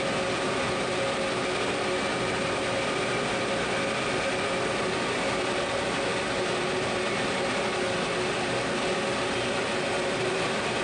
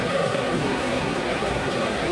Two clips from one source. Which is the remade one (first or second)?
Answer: second